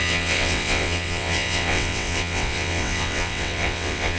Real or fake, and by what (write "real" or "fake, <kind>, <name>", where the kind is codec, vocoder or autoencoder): fake, vocoder, WaveNeXt